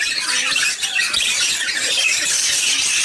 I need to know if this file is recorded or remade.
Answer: remade